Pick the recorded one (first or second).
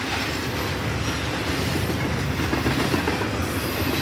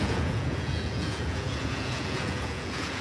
first